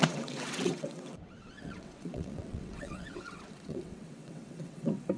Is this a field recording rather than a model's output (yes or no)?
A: no